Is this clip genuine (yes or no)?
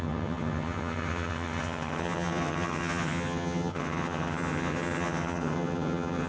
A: no